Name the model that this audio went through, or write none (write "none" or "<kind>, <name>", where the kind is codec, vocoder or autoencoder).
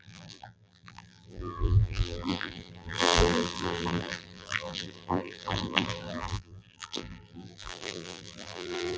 vocoder, BigVGAN v2